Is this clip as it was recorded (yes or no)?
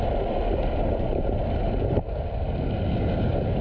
yes